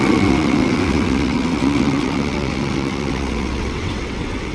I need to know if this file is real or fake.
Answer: fake